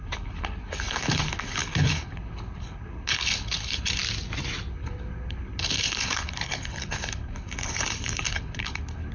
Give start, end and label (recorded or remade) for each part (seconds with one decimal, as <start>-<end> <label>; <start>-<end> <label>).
0.0-4.0 remade; 4.0-4.7 recorded; 4.7-9.1 remade